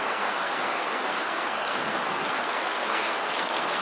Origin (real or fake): fake